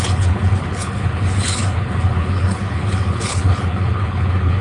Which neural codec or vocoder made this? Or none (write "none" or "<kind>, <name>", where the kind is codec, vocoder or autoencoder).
codec, HILCodec